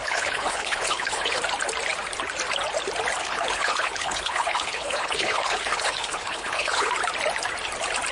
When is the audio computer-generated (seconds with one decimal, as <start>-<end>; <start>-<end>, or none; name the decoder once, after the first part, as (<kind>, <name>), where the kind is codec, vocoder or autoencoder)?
0.0-1.4 (codec, HILCodec); 3.2-6.9